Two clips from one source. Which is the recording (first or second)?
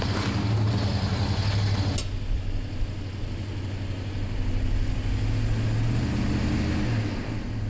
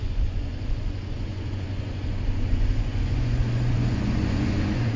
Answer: first